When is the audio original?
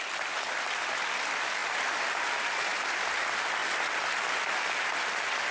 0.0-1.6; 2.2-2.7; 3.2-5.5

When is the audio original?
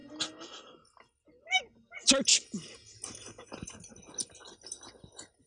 0.0-5.5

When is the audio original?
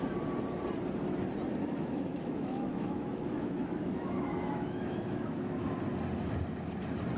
0.0-1.6; 5.7-7.2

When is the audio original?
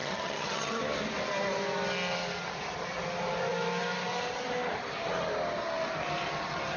0.8-6.8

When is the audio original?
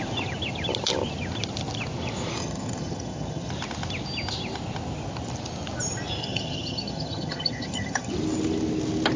0.0-2.4; 3.5-6.2; 8.1-9.2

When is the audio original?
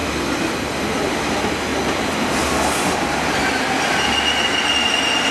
0.0-5.3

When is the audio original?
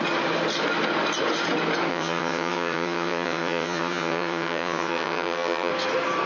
0.0-1.9; 5.7-6.3